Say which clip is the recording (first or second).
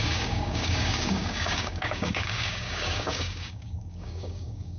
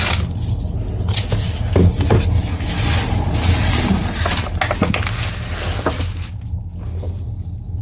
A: second